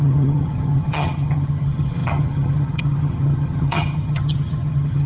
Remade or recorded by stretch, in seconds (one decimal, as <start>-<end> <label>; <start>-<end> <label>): 0.0-5.1 remade